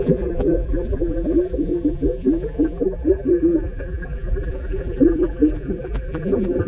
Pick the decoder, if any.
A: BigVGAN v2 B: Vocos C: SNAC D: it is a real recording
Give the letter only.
A